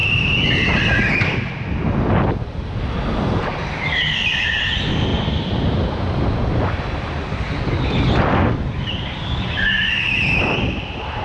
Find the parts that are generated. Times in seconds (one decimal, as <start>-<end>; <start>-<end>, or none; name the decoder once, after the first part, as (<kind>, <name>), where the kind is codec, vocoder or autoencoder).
none